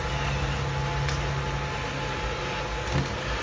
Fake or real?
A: real